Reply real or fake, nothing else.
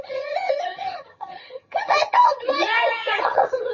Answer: fake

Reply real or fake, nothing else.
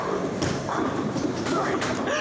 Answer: fake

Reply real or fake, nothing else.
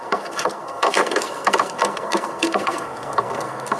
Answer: fake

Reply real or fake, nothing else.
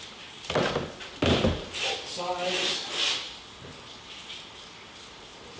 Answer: real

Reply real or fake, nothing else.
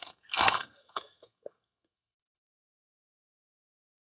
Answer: fake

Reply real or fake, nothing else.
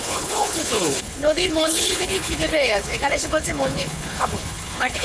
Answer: fake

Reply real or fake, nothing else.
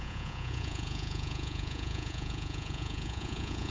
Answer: fake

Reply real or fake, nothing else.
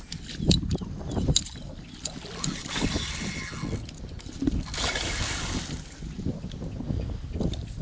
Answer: real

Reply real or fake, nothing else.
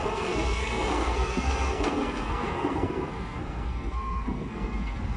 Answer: fake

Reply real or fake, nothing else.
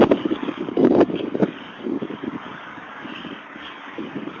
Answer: fake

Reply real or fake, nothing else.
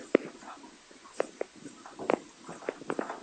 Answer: real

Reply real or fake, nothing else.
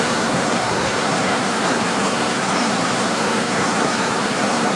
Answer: fake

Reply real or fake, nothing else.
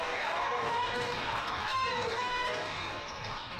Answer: fake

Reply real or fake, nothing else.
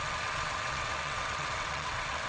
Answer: fake